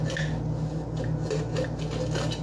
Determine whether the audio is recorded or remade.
recorded